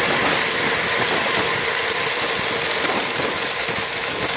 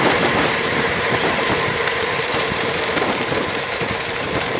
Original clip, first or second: first